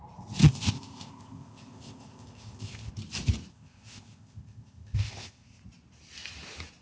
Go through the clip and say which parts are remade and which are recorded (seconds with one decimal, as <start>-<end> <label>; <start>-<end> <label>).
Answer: 0.0-0.4 recorded; 0.4-2.9 remade; 2.9-3.5 recorded; 3.5-5.6 remade; 5.6-6.8 recorded